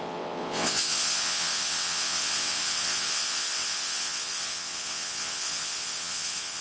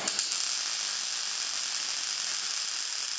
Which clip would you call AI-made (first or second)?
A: first